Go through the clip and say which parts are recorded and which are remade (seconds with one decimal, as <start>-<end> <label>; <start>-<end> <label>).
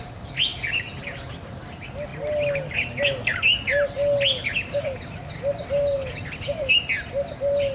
0.0-7.7 recorded